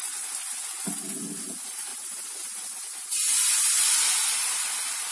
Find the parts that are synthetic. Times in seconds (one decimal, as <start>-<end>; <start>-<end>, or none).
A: none

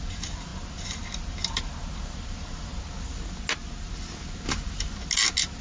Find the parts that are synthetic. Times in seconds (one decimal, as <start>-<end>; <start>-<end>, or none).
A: none

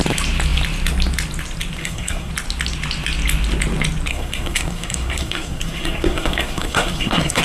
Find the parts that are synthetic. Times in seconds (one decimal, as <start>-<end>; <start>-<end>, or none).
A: 1.8-2.3; 4.1-7.4

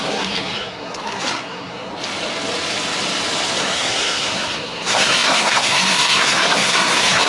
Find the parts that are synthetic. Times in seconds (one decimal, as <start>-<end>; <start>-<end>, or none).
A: 0.0-1.9; 3.6-7.3

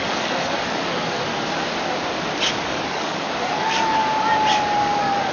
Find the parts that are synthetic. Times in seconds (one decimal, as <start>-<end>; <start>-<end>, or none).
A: 0.0-1.3; 2.6-4.0; 4.8-5.3